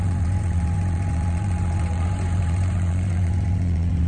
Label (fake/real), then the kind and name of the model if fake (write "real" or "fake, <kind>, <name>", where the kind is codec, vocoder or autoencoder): fake, vocoder, Vocos